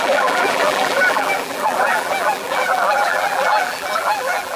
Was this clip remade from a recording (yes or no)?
yes